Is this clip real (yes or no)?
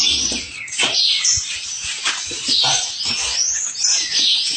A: yes